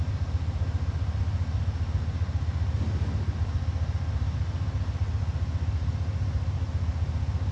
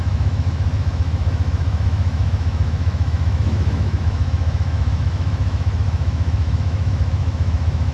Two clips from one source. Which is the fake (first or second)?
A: second